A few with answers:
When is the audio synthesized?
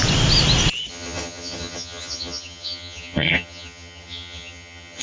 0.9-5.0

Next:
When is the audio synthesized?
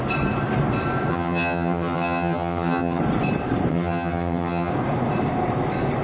1.1-3.0; 3.7-4.7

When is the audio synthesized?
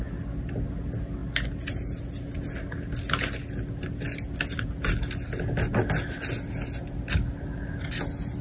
none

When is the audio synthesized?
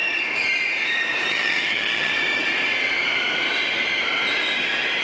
1.3-2.1